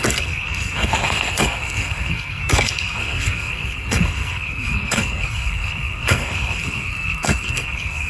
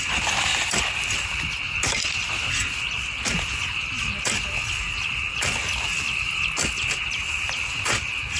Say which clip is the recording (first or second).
second